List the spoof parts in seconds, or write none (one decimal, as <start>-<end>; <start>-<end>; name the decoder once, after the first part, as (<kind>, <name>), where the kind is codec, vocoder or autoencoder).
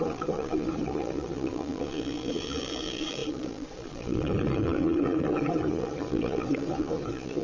0.0-7.4 (vocoder, Vocos)